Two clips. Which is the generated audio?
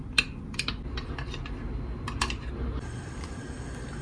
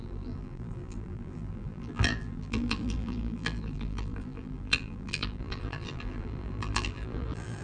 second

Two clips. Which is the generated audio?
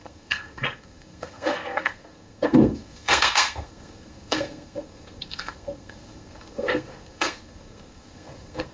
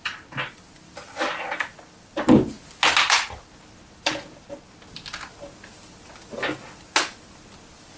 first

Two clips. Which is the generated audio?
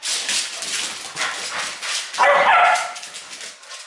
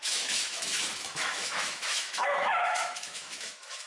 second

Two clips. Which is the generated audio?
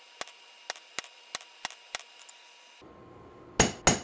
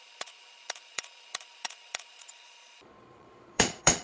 second